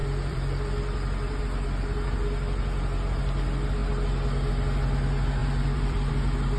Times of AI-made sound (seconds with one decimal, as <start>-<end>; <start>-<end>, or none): 0.0-1.4; 5.4-6.1